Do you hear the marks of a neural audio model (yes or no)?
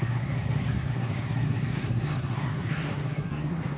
yes